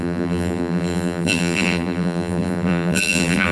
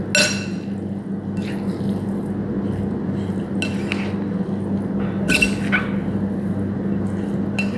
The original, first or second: second